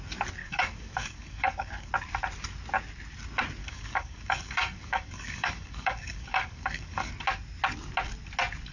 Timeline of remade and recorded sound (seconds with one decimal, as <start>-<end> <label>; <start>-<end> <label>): 0.0-0.4 recorded; 0.4-1.9 remade; 1.9-3.6 recorded; 3.6-7.1 remade; 7.1-8.7 recorded